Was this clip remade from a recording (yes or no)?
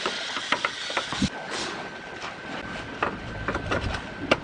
no